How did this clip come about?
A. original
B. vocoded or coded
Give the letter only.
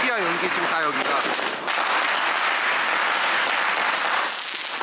A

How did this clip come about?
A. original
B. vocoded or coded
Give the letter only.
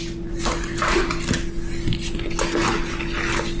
A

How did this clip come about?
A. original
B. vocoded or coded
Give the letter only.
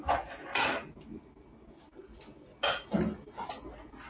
A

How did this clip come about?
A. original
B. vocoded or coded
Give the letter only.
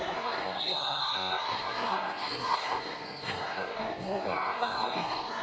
B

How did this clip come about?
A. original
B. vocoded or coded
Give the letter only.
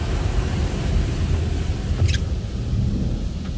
A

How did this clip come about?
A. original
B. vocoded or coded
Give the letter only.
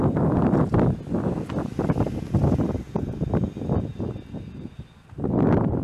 A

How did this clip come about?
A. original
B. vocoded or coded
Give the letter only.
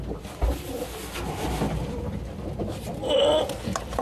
A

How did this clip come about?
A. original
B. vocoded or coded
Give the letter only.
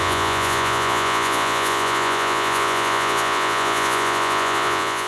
B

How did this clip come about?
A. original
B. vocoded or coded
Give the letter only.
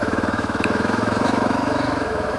B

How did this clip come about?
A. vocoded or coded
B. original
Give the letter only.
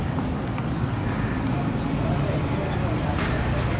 B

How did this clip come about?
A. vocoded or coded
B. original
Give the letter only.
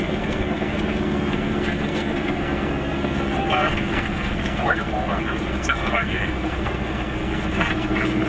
A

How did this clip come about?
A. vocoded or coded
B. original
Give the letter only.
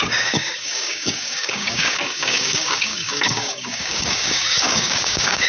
A